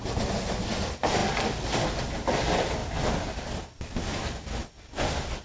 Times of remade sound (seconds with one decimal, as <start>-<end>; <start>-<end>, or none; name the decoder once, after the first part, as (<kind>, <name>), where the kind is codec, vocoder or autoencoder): none